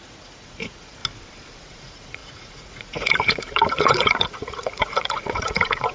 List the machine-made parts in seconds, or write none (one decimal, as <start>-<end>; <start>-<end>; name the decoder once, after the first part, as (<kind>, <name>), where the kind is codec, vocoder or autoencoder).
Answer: 0.0-1.0 (vocoder, Vocos); 1.6-5.9